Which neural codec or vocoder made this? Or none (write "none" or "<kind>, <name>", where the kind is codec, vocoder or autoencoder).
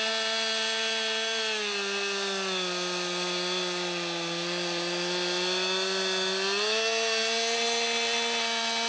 none